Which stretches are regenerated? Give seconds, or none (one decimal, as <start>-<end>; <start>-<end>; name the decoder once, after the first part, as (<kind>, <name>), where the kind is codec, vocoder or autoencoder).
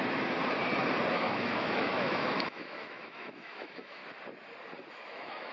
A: 1.1-4.0 (autoencoder, DAC-VAE); 4.9-5.5